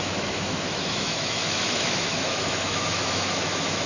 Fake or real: fake